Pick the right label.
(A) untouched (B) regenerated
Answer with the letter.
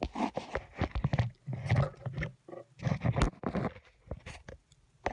A